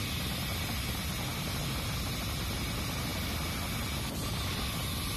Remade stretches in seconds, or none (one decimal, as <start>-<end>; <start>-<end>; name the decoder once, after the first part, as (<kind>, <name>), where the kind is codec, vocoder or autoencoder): none